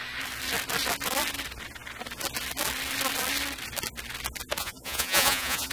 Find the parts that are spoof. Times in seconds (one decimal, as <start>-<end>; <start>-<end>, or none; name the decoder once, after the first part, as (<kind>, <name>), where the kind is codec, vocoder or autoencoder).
4.6-5.7 (vocoder, Vocos)